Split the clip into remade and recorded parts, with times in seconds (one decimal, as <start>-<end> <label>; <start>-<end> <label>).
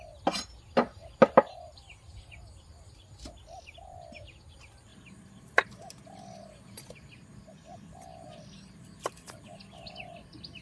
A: 0.0-4.9 recorded; 4.9-8.7 remade; 8.7-10.6 recorded